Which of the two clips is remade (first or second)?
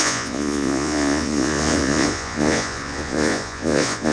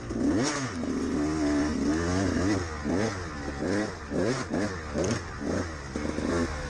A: first